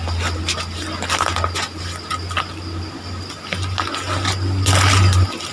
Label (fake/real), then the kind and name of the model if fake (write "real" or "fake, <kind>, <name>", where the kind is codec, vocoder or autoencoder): real